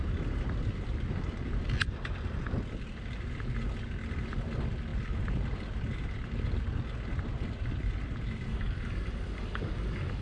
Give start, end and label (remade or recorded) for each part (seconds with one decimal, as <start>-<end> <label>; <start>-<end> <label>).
0.0-8.5 recorded; 8.5-10.2 remade